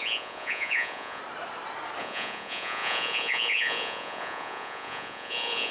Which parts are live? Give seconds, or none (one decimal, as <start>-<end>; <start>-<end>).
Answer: 1.2-2.0